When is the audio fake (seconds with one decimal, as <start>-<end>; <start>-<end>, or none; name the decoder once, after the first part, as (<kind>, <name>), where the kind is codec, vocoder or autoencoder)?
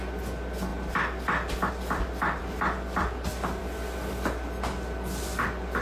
none